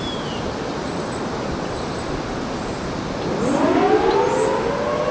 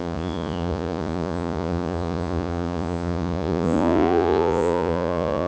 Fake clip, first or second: second